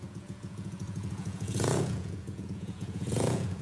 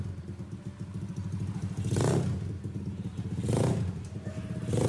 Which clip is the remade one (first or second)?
first